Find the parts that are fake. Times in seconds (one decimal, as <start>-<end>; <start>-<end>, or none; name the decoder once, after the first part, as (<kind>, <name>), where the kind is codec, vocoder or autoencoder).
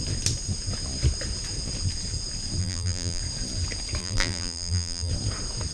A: 2.6-3.2 (vocoder, BigVGAN v2); 4.0-5.1